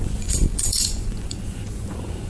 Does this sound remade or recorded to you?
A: remade